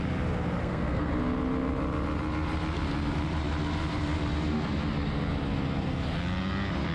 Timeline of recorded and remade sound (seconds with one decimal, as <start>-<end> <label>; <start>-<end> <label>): 0.0-0.6 recorded; 0.6-1.1 remade; 1.1-6.9 recorded